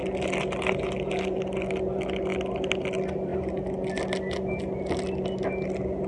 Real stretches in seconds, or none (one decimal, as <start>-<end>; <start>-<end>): 0.0-6.1